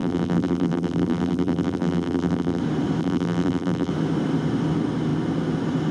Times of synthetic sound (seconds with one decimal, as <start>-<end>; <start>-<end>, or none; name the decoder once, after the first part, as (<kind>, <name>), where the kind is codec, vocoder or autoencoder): 0.0-2.6 (vocoder, BigVGAN v2); 3.0-3.9